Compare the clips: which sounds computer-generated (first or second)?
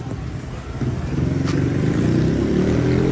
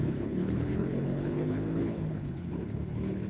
second